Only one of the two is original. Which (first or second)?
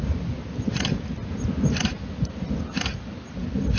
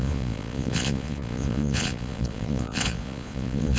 first